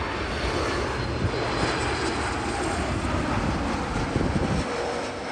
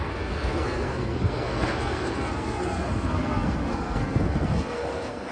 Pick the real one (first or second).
first